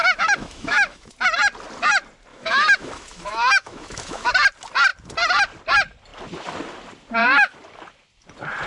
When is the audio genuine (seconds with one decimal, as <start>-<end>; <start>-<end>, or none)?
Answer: 1.1-2.3; 4.3-8.7